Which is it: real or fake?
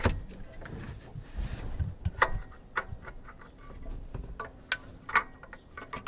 real